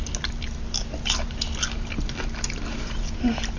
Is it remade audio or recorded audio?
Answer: recorded